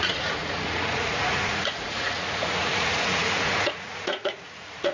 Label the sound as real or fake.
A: fake